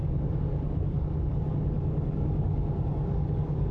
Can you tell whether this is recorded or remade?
remade